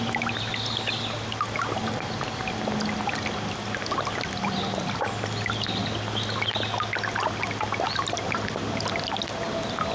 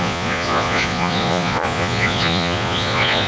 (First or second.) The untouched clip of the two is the first